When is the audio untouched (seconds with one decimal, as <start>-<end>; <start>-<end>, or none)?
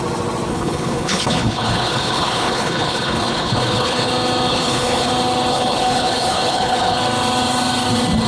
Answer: 0.0-0.5; 4.1-4.5; 5.1-5.5; 7.0-8.3